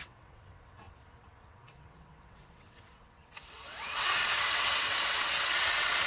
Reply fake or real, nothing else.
fake